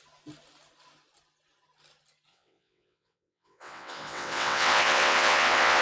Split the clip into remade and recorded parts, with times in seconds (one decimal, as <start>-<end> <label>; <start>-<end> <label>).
0.0-2.3 recorded; 2.3-5.8 remade